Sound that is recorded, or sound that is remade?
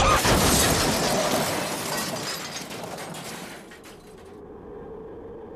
recorded